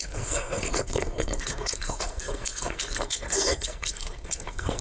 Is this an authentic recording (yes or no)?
no